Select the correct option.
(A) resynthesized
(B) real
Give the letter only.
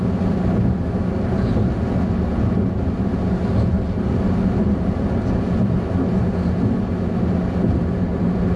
B